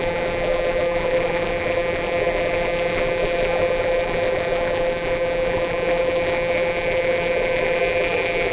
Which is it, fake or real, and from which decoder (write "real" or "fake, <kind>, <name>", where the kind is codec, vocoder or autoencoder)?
fake, vocoder, BigVGAN v2